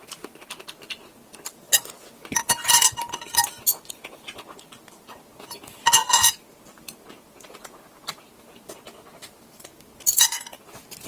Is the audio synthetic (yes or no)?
no